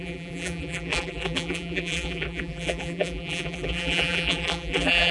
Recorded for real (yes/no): no